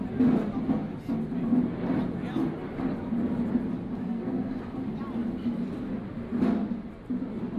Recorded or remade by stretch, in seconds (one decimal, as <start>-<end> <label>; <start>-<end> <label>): 0.0-4.0 recorded; 4.0-4.6 remade; 4.6-7.6 recorded